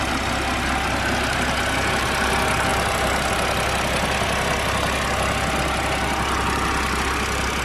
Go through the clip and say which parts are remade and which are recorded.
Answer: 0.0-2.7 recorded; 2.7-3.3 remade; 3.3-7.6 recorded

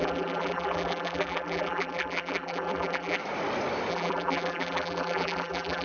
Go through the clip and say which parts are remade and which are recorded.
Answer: 0.0-3.2 remade; 3.2-3.9 recorded; 3.9-5.8 remade

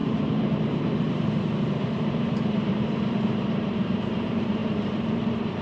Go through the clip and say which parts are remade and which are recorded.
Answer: 0.0-5.6 remade

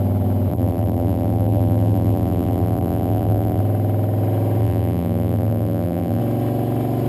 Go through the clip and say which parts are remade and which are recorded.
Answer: 0.0-0.5 recorded; 0.5-3.6 remade; 3.6-4.6 recorded; 4.6-6.2 remade; 6.2-7.1 recorded

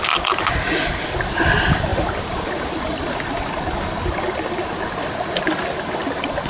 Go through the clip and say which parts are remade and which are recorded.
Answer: 0.0-1.9 recorded; 1.9-3.5 remade; 3.5-6.5 recorded

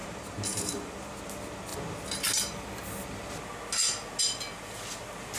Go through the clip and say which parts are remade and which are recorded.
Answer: 0.0-1.2 remade; 1.2-5.4 recorded